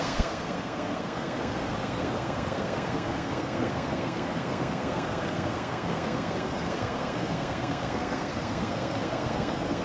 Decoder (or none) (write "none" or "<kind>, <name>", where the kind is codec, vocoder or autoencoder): codec, SNAC